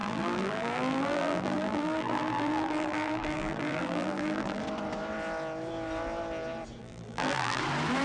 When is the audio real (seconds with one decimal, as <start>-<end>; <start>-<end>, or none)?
4.6-6.8; 7.6-8.0